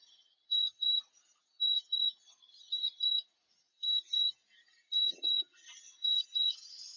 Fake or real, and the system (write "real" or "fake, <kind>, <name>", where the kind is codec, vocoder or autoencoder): fake, vocoder, Vocos